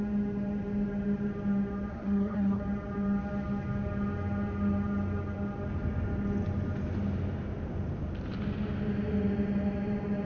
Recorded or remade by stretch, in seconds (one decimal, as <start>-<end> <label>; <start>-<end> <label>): 0.0-1.9 recorded; 1.9-2.6 remade; 2.6-10.2 recorded

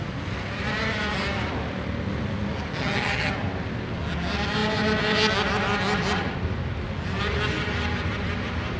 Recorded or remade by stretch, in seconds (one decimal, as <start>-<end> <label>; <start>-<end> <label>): 0.0-2.8 recorded; 2.8-3.3 remade; 3.3-8.8 recorded

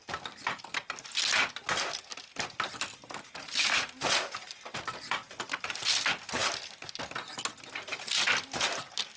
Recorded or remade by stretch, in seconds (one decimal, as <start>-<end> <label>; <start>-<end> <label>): 0.0-0.6 remade; 0.6-2.1 recorded; 2.1-5.8 remade; 5.8-9.2 recorded

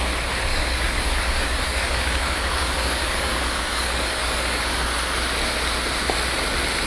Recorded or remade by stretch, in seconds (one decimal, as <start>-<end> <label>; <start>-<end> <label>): 0.0-0.5 recorded; 0.5-4.6 remade; 4.6-6.9 recorded

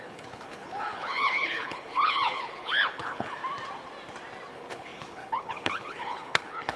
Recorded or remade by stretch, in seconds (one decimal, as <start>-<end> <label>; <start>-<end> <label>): 0.0-3.4 remade; 3.4-4.5 recorded; 4.5-6.8 remade